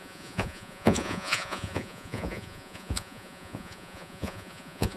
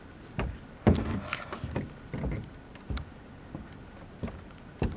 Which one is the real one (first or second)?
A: second